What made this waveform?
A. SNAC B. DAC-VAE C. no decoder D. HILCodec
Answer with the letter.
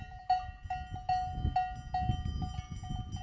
C